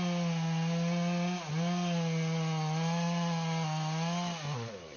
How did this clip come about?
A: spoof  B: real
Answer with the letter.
B